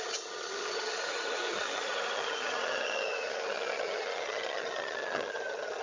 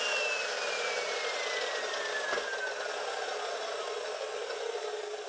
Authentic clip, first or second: second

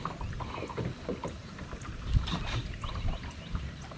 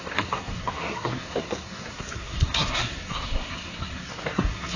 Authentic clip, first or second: first